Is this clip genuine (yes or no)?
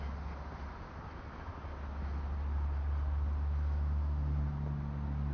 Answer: yes